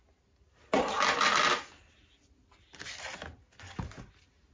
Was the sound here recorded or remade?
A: recorded